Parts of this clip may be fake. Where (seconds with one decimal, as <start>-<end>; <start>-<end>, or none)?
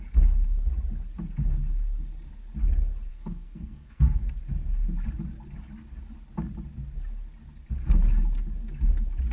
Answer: 3.1-4.2